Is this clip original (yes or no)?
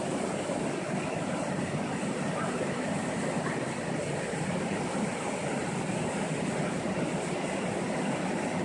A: yes